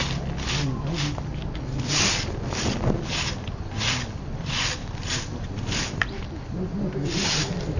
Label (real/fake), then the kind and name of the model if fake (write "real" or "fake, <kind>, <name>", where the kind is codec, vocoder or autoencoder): real